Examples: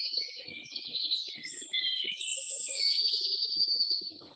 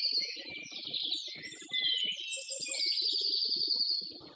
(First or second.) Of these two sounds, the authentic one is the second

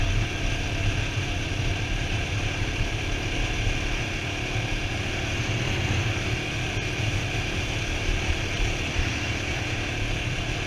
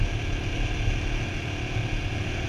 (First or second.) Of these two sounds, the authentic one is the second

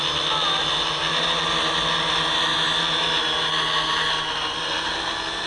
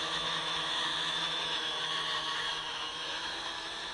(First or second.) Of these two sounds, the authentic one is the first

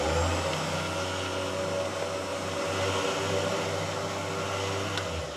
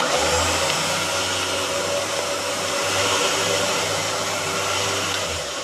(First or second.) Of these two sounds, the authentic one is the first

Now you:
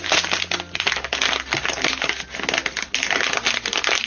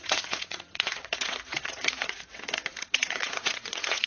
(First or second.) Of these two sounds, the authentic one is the first